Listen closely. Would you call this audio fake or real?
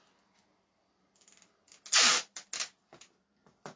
real